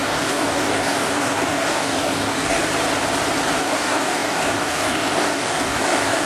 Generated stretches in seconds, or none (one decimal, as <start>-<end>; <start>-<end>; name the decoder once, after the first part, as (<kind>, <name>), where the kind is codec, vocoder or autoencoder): 0.0-2.6 (codec, DAC); 3.6-6.3